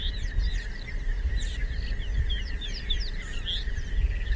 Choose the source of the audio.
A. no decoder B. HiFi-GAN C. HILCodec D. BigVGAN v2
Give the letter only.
A